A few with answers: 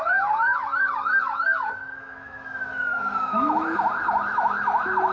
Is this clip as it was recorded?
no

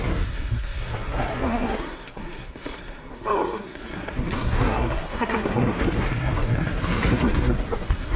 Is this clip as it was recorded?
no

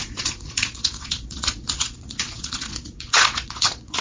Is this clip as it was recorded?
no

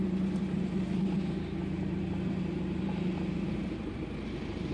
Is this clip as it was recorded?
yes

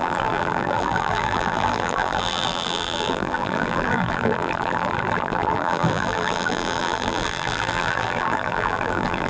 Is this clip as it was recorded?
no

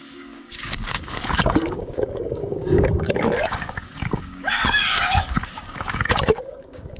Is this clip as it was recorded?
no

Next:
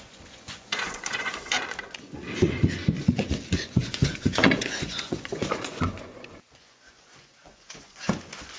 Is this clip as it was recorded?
no